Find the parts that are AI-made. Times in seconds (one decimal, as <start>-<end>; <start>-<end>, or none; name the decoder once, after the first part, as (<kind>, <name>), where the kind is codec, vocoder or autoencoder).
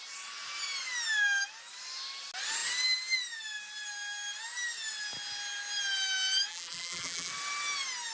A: 6.5-7.3 (vocoder, BigVGAN v2)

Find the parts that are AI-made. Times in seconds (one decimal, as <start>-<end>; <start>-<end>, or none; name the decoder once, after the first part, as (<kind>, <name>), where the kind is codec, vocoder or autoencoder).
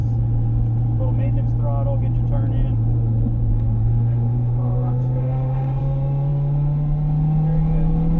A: 3.5-5.8 (autoencoder, DAC-VAE)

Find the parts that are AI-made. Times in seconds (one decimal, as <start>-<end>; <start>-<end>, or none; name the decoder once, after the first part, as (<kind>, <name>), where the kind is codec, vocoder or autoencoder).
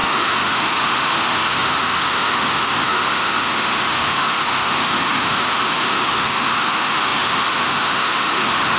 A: 0.0-8.8 (autoencoder, DAC-VAE)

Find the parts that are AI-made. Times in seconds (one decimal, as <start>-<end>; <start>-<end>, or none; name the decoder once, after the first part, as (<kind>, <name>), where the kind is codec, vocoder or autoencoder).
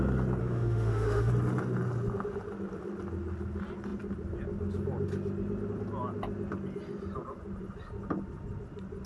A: 0.4-1.3 (autoencoder, DAC-VAE)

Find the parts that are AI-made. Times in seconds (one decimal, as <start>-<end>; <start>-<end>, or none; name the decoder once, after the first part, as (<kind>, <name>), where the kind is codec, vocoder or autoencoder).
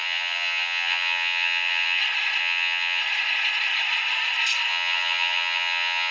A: 0.0-2.0 (vocoder, HiFi-GAN); 2.4-3.0; 4.7-6.1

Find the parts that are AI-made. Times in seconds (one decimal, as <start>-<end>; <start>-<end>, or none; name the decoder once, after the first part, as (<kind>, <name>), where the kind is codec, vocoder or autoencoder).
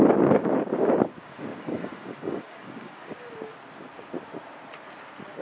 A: 1.5-3.3 (codec, DAC)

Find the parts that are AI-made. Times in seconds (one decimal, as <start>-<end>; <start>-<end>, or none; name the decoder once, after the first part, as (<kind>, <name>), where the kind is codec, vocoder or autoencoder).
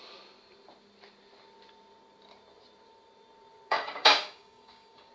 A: 3.7-5.1 (codec, DAC)